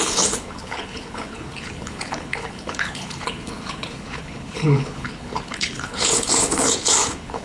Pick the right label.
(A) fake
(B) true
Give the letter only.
A